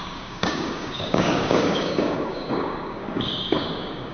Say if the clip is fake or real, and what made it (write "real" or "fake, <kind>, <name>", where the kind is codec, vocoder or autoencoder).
fake, codec, DAC